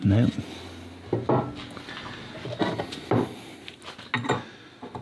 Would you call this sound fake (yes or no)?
no